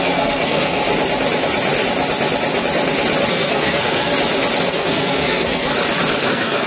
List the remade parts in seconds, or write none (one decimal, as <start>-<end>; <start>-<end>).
0.0-0.8; 3.3-4.1; 4.7-5.7; 6.3-6.7